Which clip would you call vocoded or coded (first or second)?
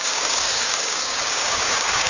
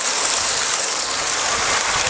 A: first